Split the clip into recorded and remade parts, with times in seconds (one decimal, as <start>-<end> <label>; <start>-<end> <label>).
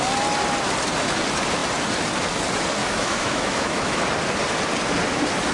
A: 0.0-2.8 recorded; 2.8-4.0 remade; 4.0-5.5 recorded